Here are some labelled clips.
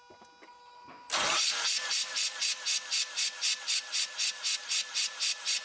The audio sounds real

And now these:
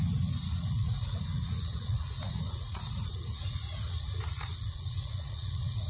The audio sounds fake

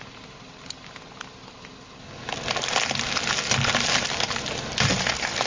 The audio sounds real